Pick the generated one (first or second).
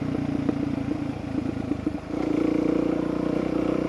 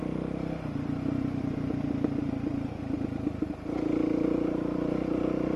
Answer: first